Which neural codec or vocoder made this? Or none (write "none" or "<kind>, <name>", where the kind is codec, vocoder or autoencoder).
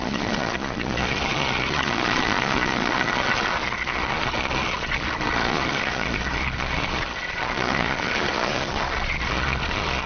vocoder, Vocos